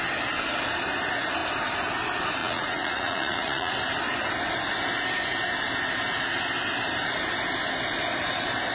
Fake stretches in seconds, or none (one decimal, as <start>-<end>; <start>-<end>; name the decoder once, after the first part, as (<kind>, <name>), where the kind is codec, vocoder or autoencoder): 2.4-3.7 (vocoder, Vocos)